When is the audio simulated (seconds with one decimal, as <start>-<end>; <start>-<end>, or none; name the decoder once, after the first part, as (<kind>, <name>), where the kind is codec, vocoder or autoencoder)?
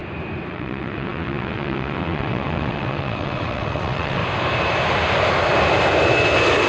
0.5-4.2 (vocoder, WaveNeXt)